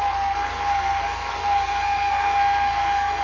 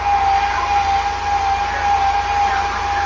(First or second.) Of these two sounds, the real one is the second